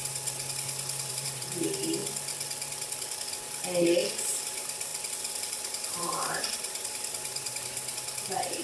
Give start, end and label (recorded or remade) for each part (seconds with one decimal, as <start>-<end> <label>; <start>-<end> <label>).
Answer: 0.0-1.1 recorded; 1.1-2.0 remade; 2.0-4.4 recorded; 4.4-4.9 remade; 4.9-5.4 recorded; 5.4-8.6 remade